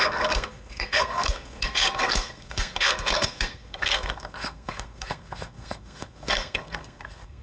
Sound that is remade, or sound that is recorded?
remade